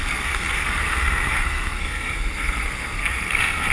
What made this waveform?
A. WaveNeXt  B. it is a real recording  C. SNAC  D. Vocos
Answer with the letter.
C